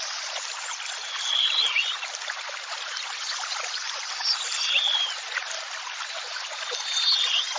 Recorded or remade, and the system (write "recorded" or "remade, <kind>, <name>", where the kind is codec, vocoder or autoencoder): recorded